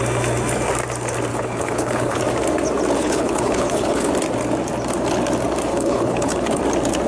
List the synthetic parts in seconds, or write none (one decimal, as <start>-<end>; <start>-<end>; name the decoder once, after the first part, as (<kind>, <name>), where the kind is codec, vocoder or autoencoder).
1.3-2.2 (codec, HILCodec); 3.0-4.1; 5.7-6.6